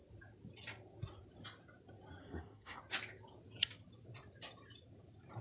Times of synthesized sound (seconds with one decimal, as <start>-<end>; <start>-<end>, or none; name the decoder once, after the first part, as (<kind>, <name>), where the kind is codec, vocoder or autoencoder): 2.2-2.8 (codec, SNAC)